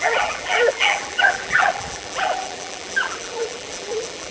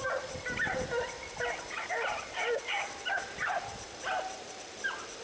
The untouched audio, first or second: second